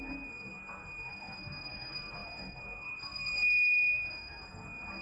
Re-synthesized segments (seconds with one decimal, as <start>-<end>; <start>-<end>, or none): 0.0-5.0